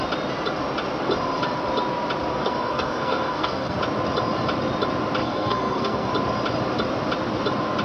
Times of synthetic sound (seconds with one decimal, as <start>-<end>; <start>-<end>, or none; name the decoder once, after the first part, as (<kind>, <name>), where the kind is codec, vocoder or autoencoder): 2.3-3.8 (codec, SNAC); 5.2-6.1